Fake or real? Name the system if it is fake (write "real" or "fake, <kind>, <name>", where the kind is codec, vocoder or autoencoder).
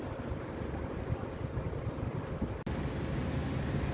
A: real